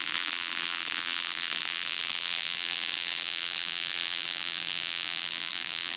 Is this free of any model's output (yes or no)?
no